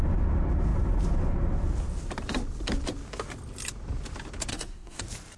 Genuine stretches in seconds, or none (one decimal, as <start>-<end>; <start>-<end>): 0.0-4.5; 5.0-5.4